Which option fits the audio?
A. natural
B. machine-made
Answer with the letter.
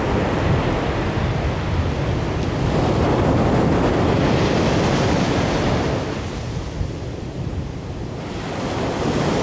A